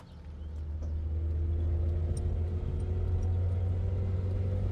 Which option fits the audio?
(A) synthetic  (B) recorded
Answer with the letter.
B